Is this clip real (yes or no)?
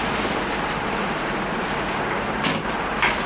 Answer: yes